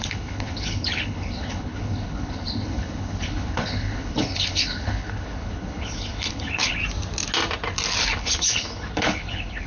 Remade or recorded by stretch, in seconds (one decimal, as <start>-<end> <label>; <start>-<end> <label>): 0.0-6.8 remade; 6.8-8.0 recorded; 8.0-9.7 remade